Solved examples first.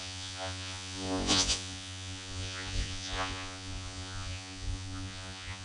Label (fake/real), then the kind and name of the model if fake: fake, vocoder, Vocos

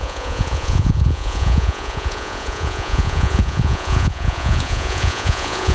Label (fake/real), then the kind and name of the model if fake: fake, vocoder, Vocos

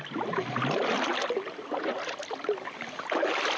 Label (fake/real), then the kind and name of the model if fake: real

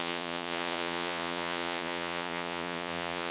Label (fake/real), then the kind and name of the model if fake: fake, vocoder, Vocos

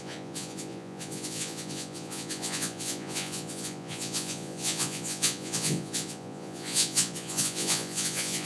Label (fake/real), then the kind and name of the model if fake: fake, vocoder, Vocos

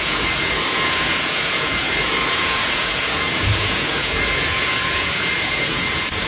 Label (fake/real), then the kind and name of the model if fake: fake, vocoder, Vocos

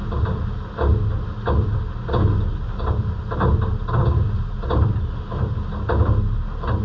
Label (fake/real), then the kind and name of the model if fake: real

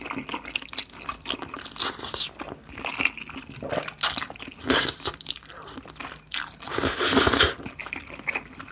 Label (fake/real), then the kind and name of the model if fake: real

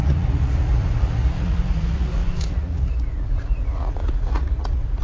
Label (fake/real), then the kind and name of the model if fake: fake, vocoder, Vocos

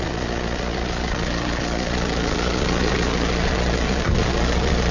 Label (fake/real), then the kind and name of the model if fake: fake, vocoder, Vocos